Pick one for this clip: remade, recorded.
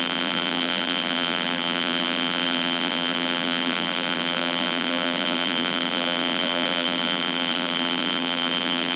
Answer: remade